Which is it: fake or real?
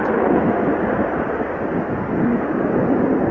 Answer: real